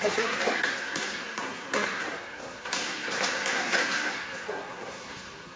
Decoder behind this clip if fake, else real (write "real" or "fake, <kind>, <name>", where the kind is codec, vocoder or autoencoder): fake, codec, SNAC